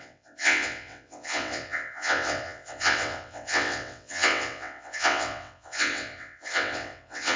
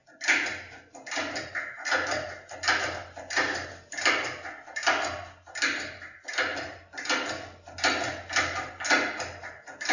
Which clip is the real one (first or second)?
second